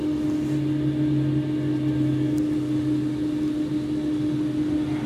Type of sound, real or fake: real